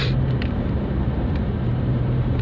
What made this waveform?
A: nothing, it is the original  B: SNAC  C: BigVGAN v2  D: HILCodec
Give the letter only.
C